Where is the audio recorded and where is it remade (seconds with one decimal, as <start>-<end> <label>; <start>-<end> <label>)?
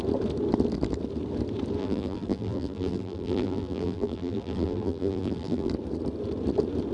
0.0-1.8 recorded; 1.8-5.7 remade; 5.7-6.9 recorded